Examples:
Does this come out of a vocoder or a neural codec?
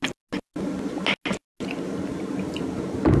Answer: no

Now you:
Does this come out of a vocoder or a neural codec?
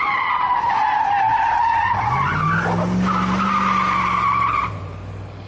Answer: no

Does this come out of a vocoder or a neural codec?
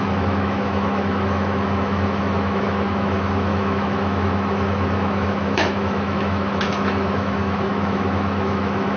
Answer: yes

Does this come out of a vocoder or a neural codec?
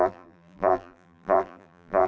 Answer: yes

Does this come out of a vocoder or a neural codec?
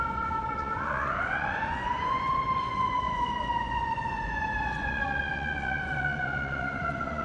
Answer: yes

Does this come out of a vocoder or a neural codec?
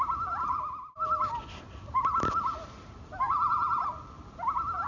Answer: no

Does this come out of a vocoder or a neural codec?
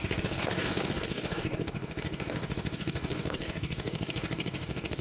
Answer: yes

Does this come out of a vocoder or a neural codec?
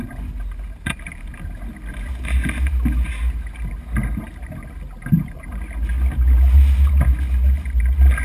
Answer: no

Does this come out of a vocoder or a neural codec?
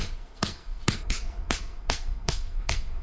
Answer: yes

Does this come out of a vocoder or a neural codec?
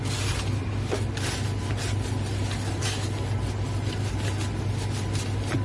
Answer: no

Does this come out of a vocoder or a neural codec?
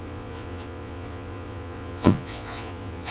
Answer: yes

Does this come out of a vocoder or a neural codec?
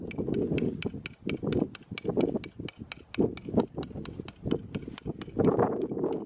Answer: no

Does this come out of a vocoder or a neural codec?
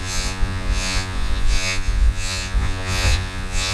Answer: yes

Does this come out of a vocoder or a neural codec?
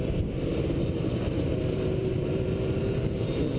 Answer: yes